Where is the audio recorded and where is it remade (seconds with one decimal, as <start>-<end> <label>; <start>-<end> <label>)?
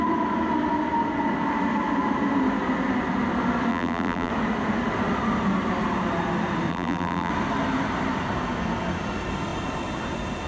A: 0.0-3.7 recorded; 3.7-4.3 remade; 4.3-6.7 recorded; 6.7-7.3 remade; 7.3-10.5 recorded